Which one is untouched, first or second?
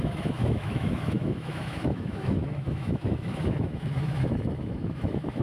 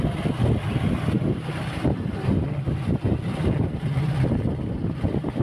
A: second